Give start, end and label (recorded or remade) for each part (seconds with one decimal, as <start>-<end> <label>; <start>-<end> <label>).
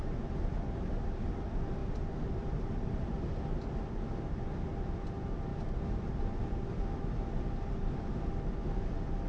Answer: 0.0-1.8 recorded; 1.8-3.3 remade; 3.3-5.5 recorded; 5.5-6.4 remade; 6.4-9.3 recorded